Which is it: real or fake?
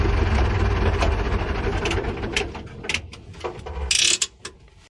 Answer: real